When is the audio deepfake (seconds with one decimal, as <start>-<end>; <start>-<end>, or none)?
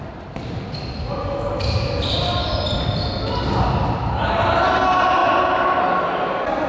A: none